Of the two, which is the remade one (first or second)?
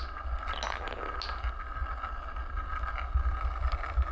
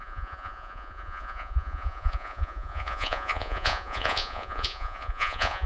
second